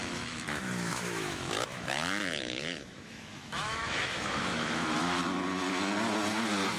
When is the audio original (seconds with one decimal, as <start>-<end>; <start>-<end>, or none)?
5.2-6.8